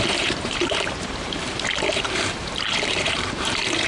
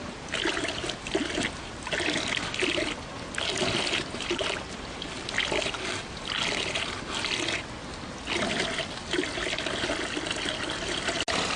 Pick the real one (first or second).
second